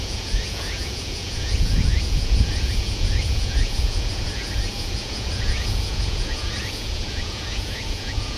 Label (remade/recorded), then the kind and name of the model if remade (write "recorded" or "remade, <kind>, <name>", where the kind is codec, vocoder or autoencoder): remade, vocoder, Vocos